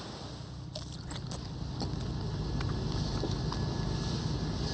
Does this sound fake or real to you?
real